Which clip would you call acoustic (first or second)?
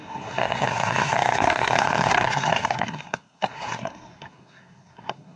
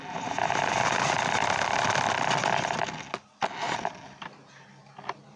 second